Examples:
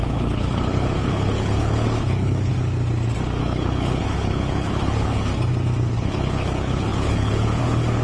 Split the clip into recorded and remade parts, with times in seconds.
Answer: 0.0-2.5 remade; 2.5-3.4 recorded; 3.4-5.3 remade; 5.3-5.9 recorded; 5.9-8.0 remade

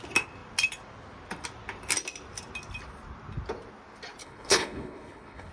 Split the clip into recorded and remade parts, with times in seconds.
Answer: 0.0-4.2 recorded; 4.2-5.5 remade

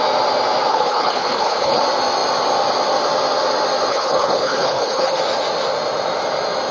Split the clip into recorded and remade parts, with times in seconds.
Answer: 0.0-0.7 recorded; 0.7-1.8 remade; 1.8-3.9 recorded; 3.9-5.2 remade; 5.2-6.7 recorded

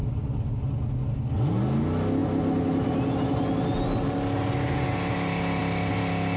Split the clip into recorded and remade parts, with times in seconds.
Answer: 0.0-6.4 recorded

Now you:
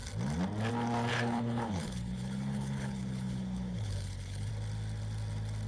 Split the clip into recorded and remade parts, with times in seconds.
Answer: 0.0-1.1 recorded; 1.1-4.5 remade; 4.5-5.7 recorded

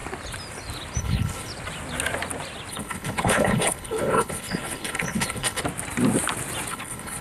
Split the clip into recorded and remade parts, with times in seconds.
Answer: 0.0-1.0 recorded; 1.0-1.5 remade; 1.5-2.7 recorded; 2.7-5.6 remade; 5.6-6.7 recorded; 6.7-7.2 remade

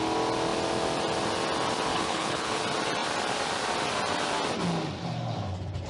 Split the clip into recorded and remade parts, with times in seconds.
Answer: 0.0-1.9 recorded; 1.9-2.6 remade; 2.6-5.9 recorded

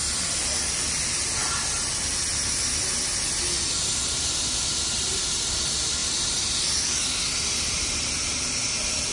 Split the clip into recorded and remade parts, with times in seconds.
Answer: 0.0-9.1 recorded